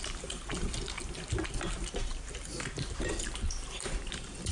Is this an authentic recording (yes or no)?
no